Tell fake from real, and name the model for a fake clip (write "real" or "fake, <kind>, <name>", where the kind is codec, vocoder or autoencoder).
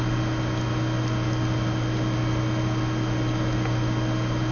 real